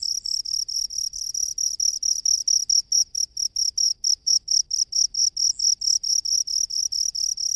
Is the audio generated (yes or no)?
no